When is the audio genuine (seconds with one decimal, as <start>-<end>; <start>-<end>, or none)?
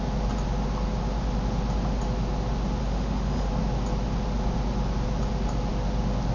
0.0-2.8; 3.5-6.3